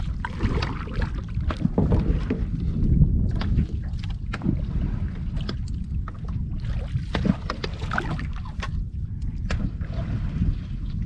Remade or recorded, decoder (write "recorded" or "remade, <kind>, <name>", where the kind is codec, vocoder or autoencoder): recorded